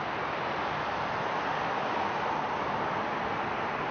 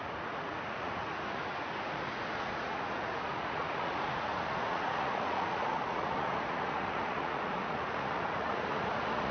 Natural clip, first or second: first